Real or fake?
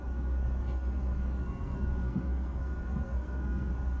fake